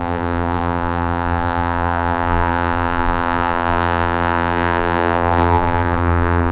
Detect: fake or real fake